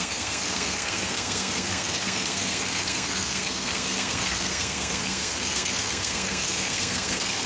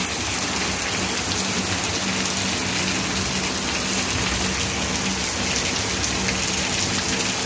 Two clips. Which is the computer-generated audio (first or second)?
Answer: first